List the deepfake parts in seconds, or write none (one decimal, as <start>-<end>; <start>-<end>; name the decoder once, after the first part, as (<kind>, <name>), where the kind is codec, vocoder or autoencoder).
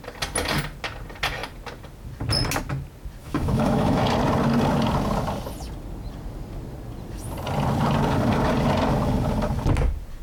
3.2-4.0 (autoencoder, DAC-VAE)